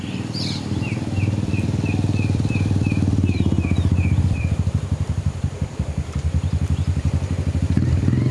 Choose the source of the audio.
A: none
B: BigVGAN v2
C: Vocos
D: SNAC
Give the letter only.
B